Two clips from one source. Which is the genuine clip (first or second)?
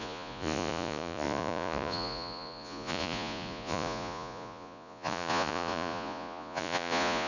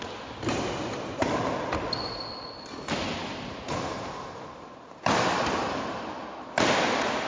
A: second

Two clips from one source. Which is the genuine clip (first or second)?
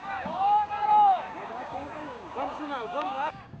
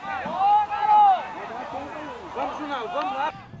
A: second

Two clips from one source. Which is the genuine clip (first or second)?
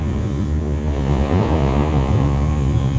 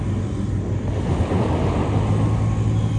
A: second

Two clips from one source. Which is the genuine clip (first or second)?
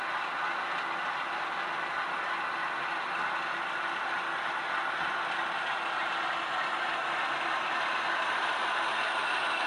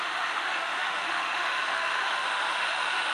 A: first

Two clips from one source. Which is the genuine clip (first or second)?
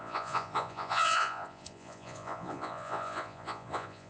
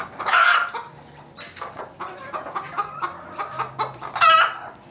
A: second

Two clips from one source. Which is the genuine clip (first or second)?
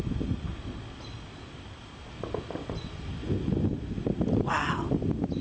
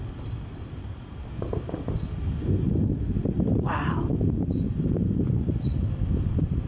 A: first